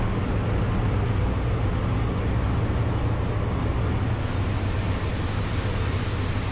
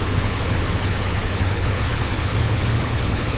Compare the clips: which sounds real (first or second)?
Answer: first